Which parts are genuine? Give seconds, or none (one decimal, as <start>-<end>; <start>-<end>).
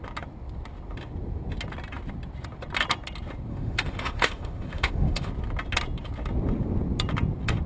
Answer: 0.0-3.5; 5.3-7.7